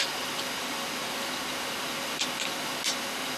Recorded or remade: recorded